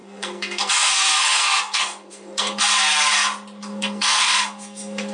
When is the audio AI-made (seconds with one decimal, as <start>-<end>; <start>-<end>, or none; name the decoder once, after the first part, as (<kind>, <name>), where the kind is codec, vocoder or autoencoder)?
0.0-2.7 (codec, SNAC); 3.6-5.1